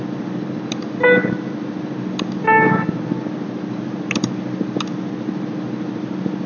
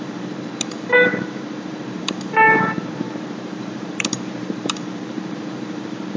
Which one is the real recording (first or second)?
first